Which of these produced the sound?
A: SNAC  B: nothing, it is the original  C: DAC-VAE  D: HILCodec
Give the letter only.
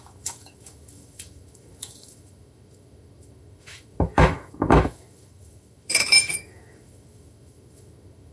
C